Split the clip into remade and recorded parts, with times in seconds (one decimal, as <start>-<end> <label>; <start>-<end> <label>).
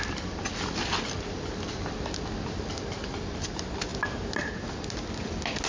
0.0-5.7 recorded